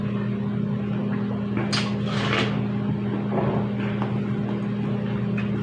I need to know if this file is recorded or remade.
recorded